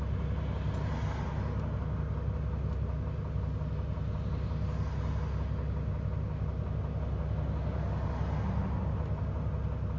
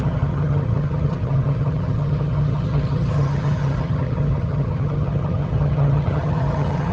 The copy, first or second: second